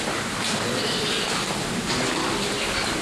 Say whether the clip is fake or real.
real